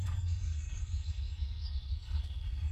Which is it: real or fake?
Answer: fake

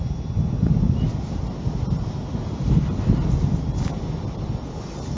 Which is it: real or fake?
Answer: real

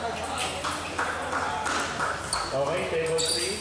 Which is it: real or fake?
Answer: real